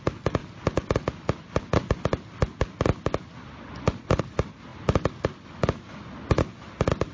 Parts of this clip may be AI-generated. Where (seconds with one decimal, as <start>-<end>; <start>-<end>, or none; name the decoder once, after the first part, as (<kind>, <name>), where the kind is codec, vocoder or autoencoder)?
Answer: none